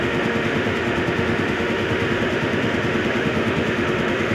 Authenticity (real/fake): fake